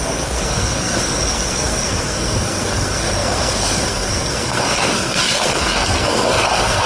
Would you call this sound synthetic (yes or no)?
yes